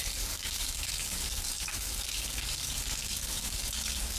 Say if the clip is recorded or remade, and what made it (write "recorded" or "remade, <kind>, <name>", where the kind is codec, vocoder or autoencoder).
remade, codec, DAC